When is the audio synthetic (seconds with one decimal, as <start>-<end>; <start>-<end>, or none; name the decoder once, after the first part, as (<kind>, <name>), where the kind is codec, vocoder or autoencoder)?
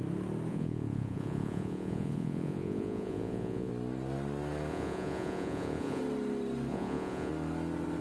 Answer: 0.5-3.7 (vocoder, Vocos); 4.7-6.0; 6.7-7.3